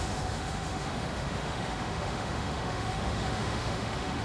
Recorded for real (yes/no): no